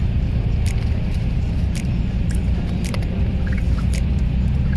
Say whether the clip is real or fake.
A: fake